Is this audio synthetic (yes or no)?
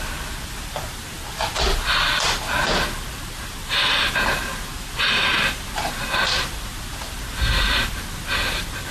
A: no